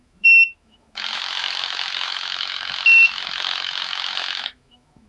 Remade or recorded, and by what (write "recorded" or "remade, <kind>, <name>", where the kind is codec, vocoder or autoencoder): remade, autoencoder, DAC-VAE